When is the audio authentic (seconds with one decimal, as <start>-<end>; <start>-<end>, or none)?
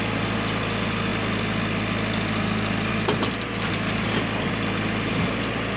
0.0-3.7; 4.5-5.8